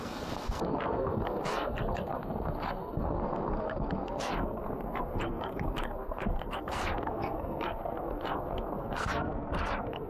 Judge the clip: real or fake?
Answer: fake